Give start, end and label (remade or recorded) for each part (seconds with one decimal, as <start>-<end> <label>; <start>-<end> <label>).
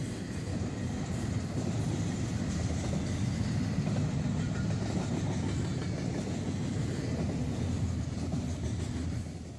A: 0.0-9.6 recorded